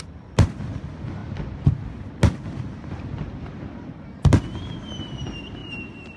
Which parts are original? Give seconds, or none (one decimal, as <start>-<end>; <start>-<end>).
0.0-5.6

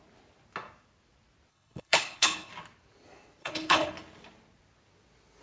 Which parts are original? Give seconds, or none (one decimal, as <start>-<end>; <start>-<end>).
0.0-1.5; 2.5-3.4; 3.9-5.4

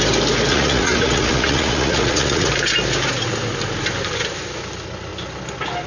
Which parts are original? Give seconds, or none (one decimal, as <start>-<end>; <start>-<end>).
0.0-0.5; 2.5-5.9